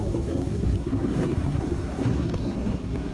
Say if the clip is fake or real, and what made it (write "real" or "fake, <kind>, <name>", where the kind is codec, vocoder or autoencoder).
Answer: fake, codec, SNAC